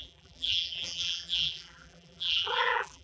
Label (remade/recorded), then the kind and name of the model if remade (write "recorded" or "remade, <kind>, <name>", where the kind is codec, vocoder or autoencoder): remade, vocoder, BigVGAN v2